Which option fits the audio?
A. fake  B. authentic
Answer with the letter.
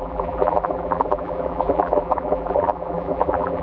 A